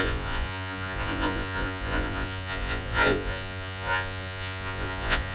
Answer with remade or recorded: remade